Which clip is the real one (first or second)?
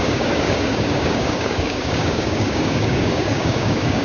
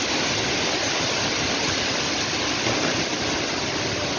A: second